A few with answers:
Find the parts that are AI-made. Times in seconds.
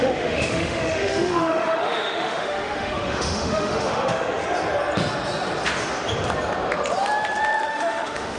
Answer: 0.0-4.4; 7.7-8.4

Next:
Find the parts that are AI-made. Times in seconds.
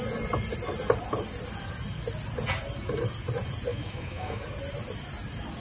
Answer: 3.7-4.4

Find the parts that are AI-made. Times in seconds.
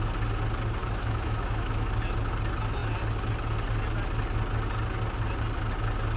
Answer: 0.8-1.9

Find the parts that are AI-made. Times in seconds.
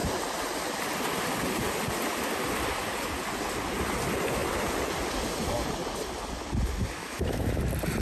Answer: 7.0-7.6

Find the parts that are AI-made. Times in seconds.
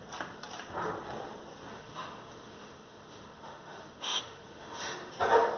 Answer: 1.7-5.1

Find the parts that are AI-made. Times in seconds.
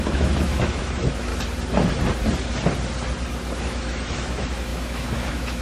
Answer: 0.0-1.3; 3.6-5.6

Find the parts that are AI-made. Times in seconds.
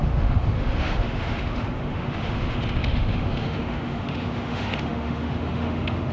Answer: 0.0-6.1